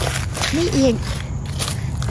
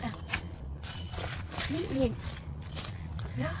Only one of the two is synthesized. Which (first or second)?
second